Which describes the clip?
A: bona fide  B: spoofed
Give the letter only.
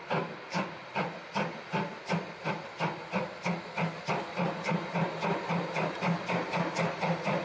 A